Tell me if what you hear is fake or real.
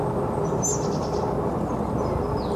real